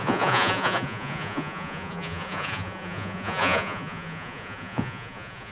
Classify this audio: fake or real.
fake